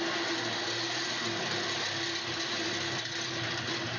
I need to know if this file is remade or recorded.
recorded